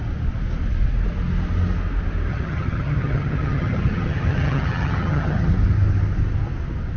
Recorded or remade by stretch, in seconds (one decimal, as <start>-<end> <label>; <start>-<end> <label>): 0.0-2.3 recorded; 2.3-5.5 remade; 5.5-7.0 recorded